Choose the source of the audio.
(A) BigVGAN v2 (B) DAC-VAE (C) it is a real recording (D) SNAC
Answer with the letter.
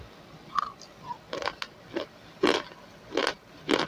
C